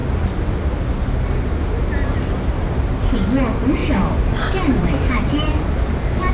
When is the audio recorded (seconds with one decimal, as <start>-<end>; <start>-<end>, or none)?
0.0-3.8